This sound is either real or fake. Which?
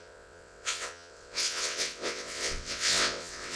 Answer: fake